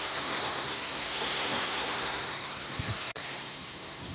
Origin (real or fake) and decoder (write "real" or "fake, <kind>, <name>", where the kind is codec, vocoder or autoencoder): fake, codec, SNAC